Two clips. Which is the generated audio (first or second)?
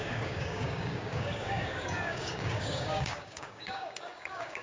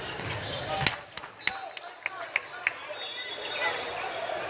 first